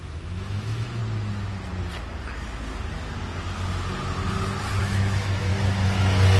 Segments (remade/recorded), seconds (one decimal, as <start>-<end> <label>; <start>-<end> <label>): 0.0-1.0 remade; 1.0-4.8 recorded; 4.8-5.5 remade; 5.5-6.4 recorded